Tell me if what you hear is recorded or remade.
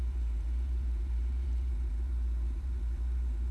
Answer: remade